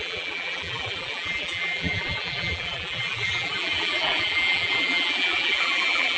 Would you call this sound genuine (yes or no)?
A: no